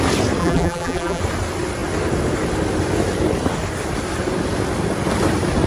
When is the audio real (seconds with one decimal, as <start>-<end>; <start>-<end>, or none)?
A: 0.0-0.4; 1.2-5.7